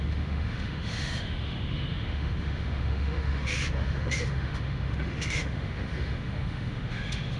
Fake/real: fake